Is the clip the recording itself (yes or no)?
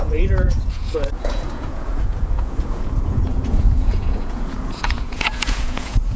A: no